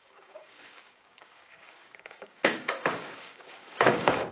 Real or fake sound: fake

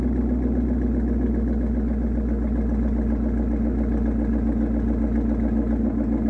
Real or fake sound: real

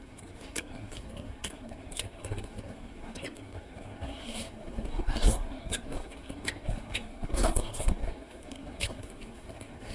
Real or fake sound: fake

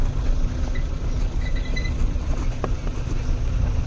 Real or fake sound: real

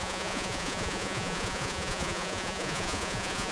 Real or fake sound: fake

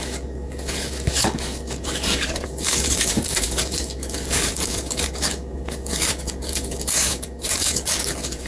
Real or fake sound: fake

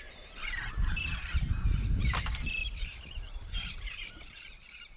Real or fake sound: fake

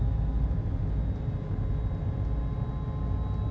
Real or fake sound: real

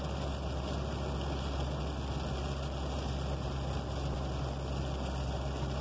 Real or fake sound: real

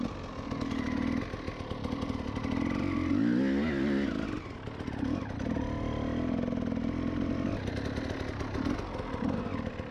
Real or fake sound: real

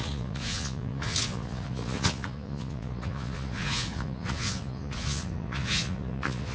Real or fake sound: fake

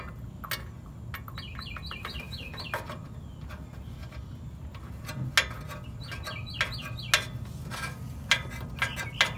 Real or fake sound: real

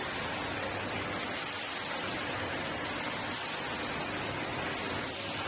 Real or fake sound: fake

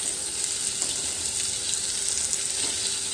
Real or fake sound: real